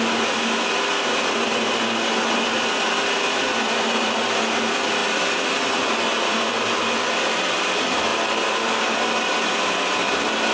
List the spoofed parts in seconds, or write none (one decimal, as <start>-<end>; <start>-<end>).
none